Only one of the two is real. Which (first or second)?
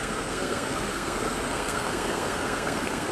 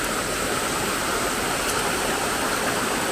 second